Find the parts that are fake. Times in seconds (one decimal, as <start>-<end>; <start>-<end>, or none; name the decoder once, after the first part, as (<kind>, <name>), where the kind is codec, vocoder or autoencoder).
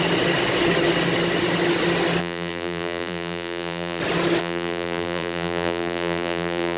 2.2-4.0 (vocoder, BigVGAN v2); 4.4-6.8